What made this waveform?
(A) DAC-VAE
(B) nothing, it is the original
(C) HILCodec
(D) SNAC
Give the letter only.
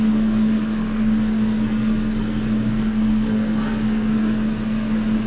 D